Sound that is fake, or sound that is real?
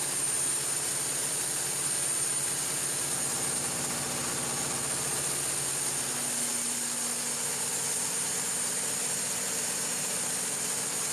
real